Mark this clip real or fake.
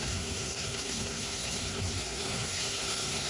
fake